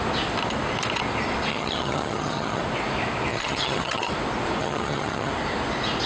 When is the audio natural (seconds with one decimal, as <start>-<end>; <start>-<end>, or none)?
0.0-1.5; 2.6-3.3; 4.1-4.6; 5.3-6.1